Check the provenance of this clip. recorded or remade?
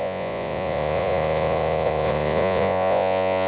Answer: remade